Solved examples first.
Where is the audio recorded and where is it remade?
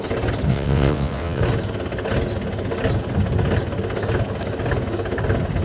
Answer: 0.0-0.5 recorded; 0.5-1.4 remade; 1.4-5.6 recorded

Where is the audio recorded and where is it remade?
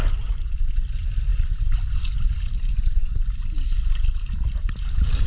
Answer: 0.0-5.3 recorded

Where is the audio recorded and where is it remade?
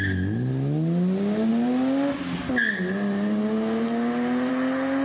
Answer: 0.0-5.0 recorded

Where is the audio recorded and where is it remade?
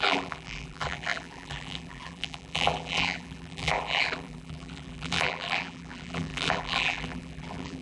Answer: 0.0-7.8 remade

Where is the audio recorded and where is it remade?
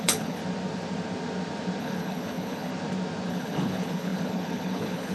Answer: 0.0-0.4 remade; 0.4-1.8 recorded; 1.8-2.7 remade; 2.7-3.3 recorded; 3.3-5.1 remade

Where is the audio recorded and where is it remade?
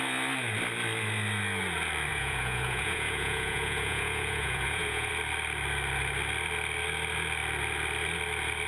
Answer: 0.0-2.1 recorded; 2.1-5.1 remade; 5.1-8.7 recorded